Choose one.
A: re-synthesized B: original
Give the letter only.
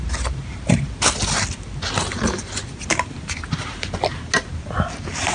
B